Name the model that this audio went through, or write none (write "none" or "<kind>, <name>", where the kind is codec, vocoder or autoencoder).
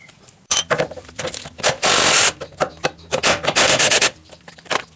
vocoder, BigVGAN v2